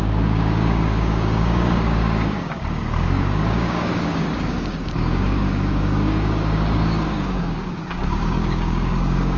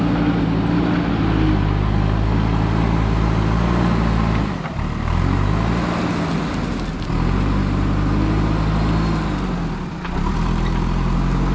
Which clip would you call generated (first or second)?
first